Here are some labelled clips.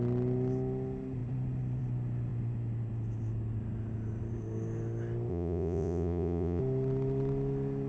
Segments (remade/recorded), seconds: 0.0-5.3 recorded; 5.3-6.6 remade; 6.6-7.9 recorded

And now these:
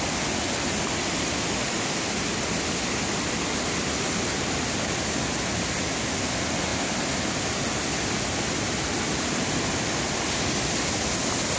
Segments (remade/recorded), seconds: 0.0-11.6 recorded

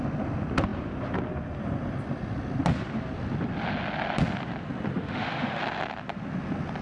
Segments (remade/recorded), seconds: 0.0-4.9 recorded; 4.9-5.6 remade; 5.6-6.8 recorded

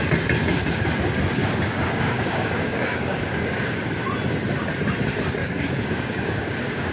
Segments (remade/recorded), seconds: 0.0-1.4 recorded; 1.4-4.0 remade; 4.0-5.4 recorded; 5.4-6.9 remade

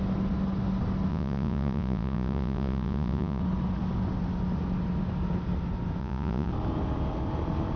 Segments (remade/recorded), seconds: 0.0-1.1 recorded; 1.1-3.4 remade; 3.4-6.0 recorded; 6.0-6.5 remade; 6.5-7.8 recorded

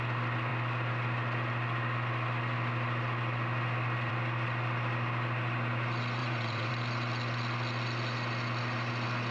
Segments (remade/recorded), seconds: 0.0-6.2 recorded; 6.2-6.7 remade; 6.7-9.3 recorded

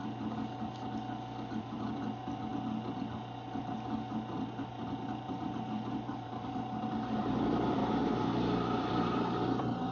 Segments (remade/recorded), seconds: 0.0-1.6 recorded; 1.6-2.5 remade; 2.5-4.8 recorded; 4.8-9.9 remade

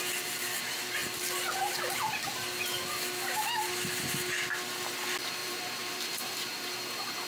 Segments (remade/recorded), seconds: 0.0-5.4 recorded; 5.4-6.5 remade; 6.5-7.3 recorded